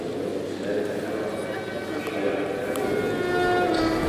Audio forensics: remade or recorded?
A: recorded